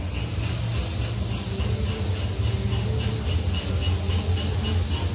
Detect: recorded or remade recorded